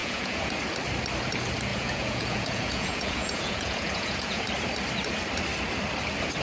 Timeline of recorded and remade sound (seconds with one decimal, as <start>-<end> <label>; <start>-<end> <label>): 0.0-0.5 remade; 0.5-1.7 recorded; 1.7-4.4 remade; 4.4-6.4 recorded